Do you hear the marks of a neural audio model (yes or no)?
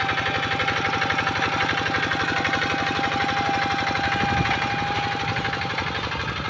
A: no